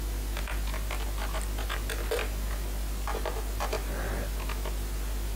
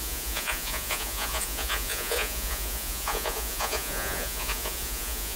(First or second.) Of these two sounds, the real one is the first